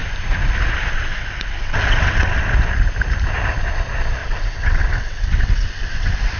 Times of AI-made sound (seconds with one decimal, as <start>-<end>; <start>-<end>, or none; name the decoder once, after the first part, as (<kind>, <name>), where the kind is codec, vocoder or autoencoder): 1.1-2.5 (vocoder, WaveNeXt); 4.2-6.4

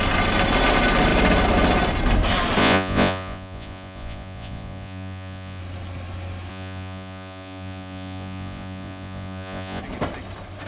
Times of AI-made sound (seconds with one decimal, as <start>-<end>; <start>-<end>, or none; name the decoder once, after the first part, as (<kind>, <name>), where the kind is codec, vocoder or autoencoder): 2.6-5.6 (vocoder, Vocos); 6.5-9.8

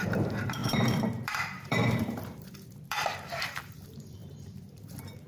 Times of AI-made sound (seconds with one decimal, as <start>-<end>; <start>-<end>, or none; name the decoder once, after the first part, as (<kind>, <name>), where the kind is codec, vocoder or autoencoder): 0.0-5.3 (vocoder, BigVGAN v2)

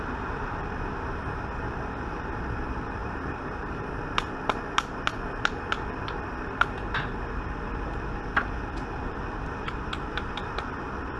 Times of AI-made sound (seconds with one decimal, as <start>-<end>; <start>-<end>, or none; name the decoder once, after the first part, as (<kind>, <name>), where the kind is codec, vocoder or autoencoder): 3.0-3.9 (vocoder, BigVGAN v2)